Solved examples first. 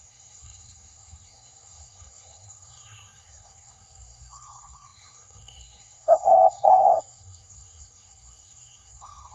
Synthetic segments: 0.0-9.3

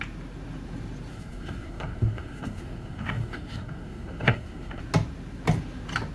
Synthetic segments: 1.1-4.8